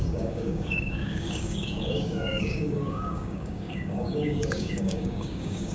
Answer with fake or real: fake